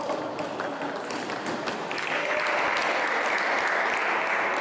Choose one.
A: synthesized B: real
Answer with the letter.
B